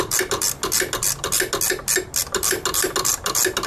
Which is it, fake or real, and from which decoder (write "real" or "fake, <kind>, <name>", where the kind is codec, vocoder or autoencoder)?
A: real